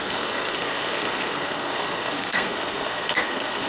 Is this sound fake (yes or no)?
yes